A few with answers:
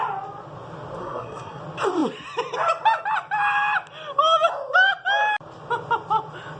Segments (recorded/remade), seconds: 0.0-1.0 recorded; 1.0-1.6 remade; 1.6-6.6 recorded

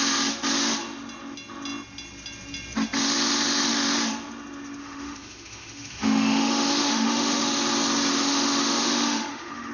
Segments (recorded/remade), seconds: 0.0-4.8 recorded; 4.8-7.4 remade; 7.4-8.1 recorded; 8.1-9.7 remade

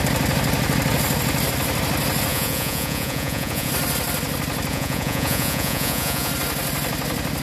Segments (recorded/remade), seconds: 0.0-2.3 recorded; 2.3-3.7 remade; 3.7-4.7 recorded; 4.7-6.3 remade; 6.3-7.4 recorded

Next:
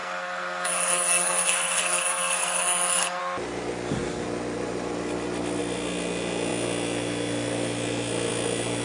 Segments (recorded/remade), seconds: 0.0-3.2 remade; 3.2-8.8 recorded

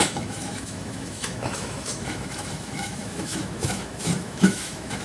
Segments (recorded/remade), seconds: 0.0-5.0 remade

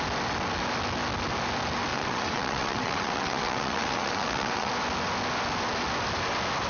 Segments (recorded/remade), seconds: 0.0-1.9 recorded; 1.9-4.7 remade; 4.7-6.7 recorded

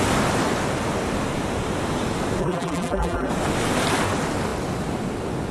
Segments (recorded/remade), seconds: 0.0-2.4 recorded; 2.4-3.3 remade; 3.3-5.5 recorded

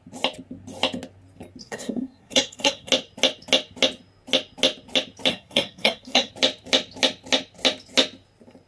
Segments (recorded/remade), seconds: 0.0-1.6 recorded; 1.6-2.9 remade; 2.9-5.3 recorded; 5.3-6.3 remade; 6.3-8.7 recorded